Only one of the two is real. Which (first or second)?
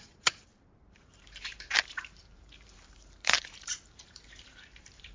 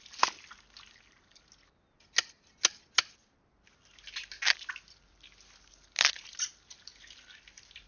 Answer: second